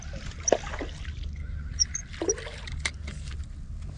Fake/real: real